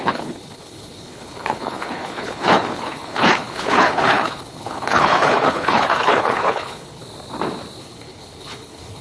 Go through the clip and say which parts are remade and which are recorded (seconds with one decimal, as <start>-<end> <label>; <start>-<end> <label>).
0.0-7.0 remade; 7.0-7.8 recorded; 7.8-9.0 remade